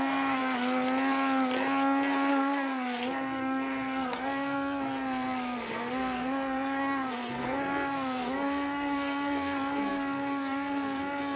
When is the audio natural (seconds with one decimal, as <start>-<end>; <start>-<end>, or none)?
0.4-2.3